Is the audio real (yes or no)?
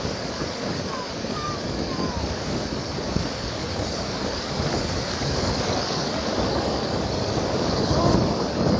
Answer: no